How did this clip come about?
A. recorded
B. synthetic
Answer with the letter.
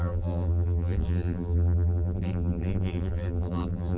B